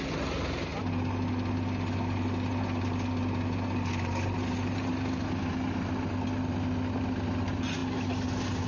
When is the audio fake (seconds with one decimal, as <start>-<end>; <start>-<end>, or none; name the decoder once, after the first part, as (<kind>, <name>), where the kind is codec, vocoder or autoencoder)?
none